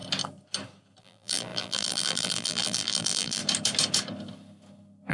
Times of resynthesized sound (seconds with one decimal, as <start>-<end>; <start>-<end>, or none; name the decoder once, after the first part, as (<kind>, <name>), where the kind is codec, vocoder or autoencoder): 1.0-3.4 (vocoder, BigVGAN v2)